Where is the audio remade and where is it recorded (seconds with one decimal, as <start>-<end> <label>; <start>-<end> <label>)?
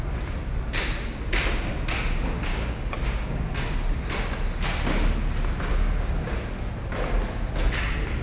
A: 0.0-2.5 recorded; 2.5-3.5 remade; 3.5-5.7 recorded; 5.7-6.3 remade; 6.3-8.2 recorded